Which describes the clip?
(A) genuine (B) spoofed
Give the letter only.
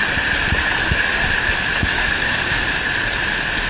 A